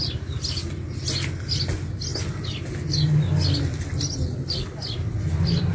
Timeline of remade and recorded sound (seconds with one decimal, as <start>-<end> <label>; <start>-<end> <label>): 0.0-5.7 recorded

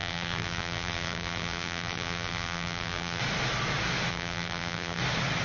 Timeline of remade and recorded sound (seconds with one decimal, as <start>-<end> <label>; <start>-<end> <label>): 0.0-3.2 remade; 3.2-4.1 recorded; 4.1-5.0 remade; 5.0-5.4 recorded

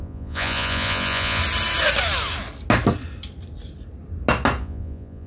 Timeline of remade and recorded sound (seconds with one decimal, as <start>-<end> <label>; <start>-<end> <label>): 0.0-1.4 remade; 1.4-4.6 recorded; 4.6-5.3 remade

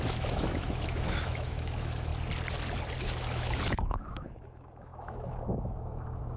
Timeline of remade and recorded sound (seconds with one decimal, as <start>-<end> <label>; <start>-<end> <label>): 0.0-2.1 remade; 2.1-3.0 recorded; 3.0-6.4 remade

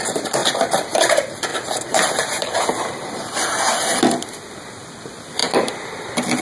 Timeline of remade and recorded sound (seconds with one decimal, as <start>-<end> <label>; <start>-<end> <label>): 0.0-1.5 recorded; 1.5-4.0 remade; 4.0-6.4 recorded

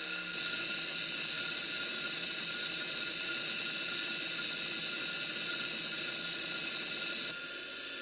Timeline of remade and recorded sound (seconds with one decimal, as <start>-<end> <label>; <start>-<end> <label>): 0.0-1.9 recorded; 1.9-3.3 remade; 3.3-8.0 recorded

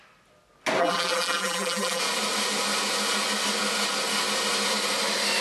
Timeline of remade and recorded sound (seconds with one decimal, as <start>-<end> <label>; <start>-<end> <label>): 0.0-0.8 recorded; 0.8-2.0 remade; 2.0-5.4 recorded